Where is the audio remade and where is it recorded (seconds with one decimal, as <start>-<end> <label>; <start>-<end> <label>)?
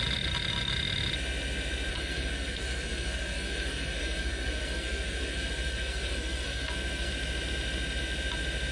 0.0-1.9 recorded; 1.9-7.1 remade; 7.1-8.7 recorded